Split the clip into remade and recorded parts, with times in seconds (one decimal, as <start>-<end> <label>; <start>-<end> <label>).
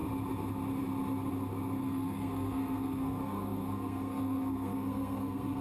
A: 0.0-1.8 recorded; 1.8-5.6 remade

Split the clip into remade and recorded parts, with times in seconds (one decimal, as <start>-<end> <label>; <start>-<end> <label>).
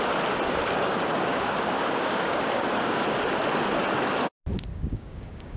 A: 0.0-0.6 recorded; 0.6-3.2 remade; 3.2-4.7 recorded; 4.7-5.6 remade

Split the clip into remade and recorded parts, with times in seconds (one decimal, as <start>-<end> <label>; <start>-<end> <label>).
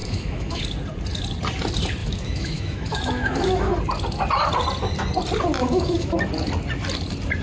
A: 0.0-0.6 remade; 0.6-2.0 recorded; 2.0-3.7 remade; 3.7-5.6 recorded; 5.6-6.2 remade; 6.2-7.4 recorded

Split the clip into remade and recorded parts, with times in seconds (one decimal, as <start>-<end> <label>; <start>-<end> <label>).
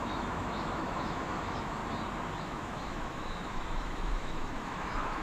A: 0.0-1.8 remade; 1.8-2.4 recorded; 2.4-5.2 remade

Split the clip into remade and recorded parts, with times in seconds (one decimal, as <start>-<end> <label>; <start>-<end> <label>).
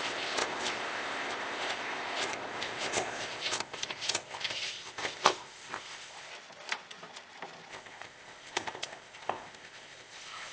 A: 0.0-6.3 remade; 6.3-7.7 recorded; 7.7-10.5 remade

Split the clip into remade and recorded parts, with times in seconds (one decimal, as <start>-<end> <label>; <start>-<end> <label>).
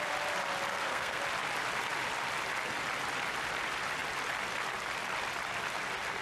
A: 0.0-0.7 recorded; 0.7-1.2 remade; 1.2-6.2 recorded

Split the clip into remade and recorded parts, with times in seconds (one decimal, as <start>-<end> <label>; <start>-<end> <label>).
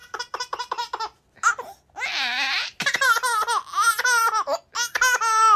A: 0.0-5.6 recorded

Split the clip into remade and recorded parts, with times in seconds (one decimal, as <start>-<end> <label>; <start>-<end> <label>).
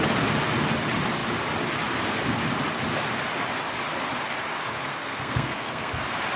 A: 0.0-4.9 recorded; 4.9-5.9 remade; 5.9-6.4 recorded